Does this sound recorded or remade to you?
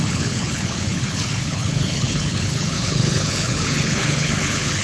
remade